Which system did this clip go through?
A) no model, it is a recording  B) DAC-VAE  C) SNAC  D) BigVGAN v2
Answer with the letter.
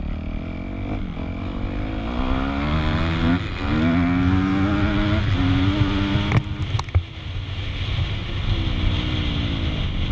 A